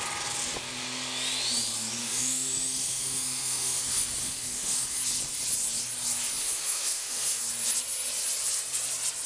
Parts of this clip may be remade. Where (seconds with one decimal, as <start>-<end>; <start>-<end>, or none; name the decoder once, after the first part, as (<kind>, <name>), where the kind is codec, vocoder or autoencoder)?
2.0-3.8 (autoencoder, DAC-VAE); 4.2-5.0; 6.4-7.4